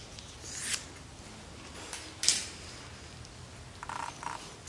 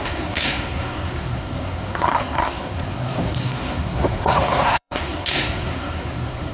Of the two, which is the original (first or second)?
first